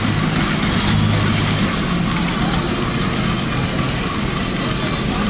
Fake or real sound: real